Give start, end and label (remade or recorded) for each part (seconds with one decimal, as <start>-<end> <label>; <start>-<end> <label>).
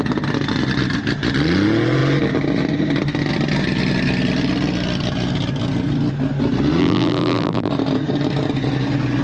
0.0-6.8 recorded; 6.8-7.7 remade; 7.7-9.2 recorded